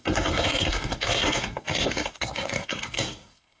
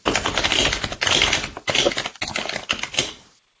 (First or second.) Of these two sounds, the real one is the second